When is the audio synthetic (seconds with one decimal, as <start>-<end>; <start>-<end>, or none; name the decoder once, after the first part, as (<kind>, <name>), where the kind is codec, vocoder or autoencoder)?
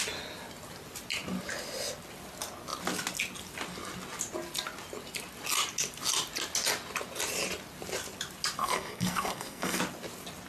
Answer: 8.6-9.8 (codec, SNAC)